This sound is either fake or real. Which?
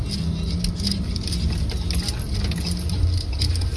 real